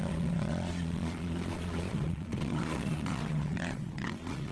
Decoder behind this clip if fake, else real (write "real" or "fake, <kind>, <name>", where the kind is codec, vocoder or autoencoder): fake, vocoder, Vocos